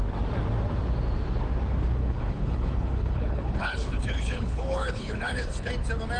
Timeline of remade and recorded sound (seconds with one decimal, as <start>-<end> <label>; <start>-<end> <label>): 0.0-2.0 recorded; 2.0-5.7 remade; 5.7-6.2 recorded